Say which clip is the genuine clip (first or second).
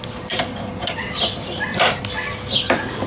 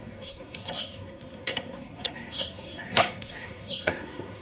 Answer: first